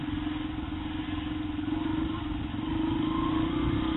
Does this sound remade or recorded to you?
recorded